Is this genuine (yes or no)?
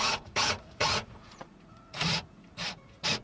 no